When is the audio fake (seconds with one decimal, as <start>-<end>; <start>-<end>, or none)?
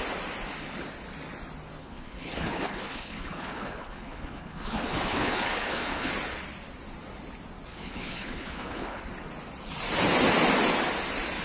1.8-6.1; 7.7-9.0